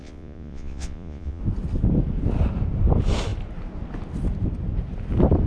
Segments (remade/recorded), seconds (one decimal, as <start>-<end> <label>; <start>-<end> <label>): 0.0-1.4 remade; 1.4-5.5 recorded